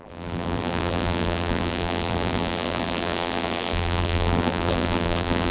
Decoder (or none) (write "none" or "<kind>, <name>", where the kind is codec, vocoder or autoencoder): vocoder, BigVGAN v2